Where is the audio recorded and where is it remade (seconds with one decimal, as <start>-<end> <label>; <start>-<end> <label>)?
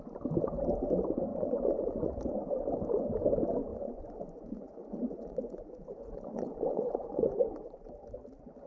0.0-1.3 recorded; 1.3-2.1 remade; 2.1-3.7 recorded; 3.7-7.9 remade; 7.9-8.7 recorded